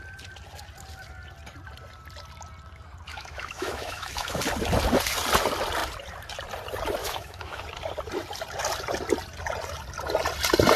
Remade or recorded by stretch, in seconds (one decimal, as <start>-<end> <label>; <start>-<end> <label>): 0.0-3.1 recorded; 3.1-4.4 remade; 4.4-7.0 recorded; 7.0-7.6 remade; 7.6-10.8 recorded